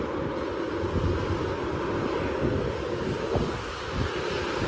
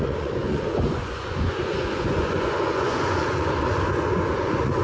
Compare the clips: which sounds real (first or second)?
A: first